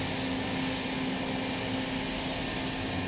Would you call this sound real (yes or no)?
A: yes